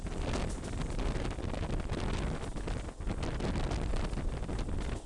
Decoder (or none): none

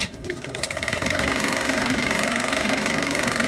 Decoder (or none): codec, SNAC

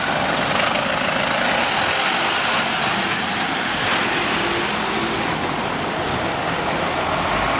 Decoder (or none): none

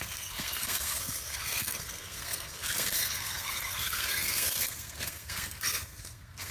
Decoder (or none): codec, SNAC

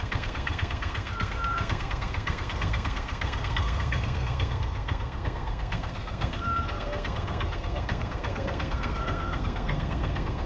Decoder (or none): codec, SNAC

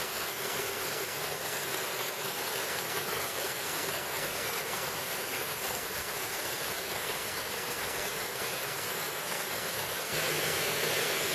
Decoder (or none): codec, SNAC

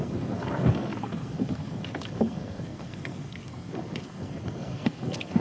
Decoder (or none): codec, SNAC